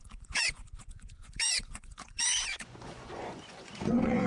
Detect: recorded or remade remade